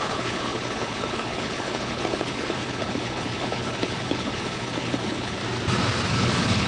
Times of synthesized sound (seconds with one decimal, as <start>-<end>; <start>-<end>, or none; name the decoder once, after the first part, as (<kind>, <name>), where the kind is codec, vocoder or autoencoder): 0.0-5.4 (codec, HILCodec); 6.1-6.7